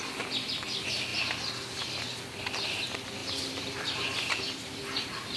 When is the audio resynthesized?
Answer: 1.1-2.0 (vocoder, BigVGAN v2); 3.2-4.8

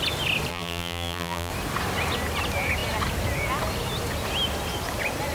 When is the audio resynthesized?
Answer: 0.5-1.5 (vocoder, BigVGAN v2)

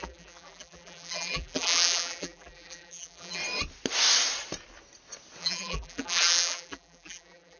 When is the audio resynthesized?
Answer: 0.0-3.4 (vocoder, BigVGAN v2); 5.4-7.6